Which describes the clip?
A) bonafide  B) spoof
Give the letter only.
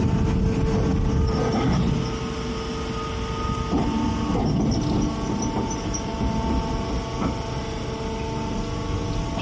A